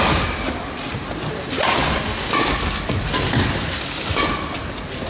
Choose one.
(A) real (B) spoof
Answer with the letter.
A